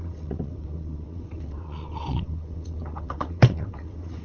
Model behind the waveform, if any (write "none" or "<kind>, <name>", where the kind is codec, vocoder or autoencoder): vocoder, WaveNeXt